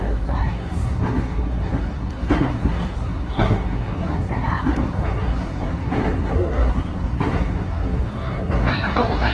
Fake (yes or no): yes